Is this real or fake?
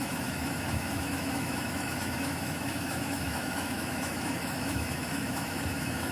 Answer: fake